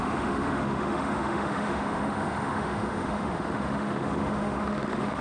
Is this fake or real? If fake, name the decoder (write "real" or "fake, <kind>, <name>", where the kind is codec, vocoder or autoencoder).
fake, autoencoder, DAC-VAE